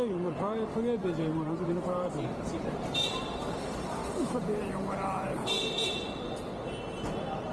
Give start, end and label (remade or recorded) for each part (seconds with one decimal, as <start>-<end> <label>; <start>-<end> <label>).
0.0-1.0 recorded; 1.0-5.5 remade; 5.5-7.5 recorded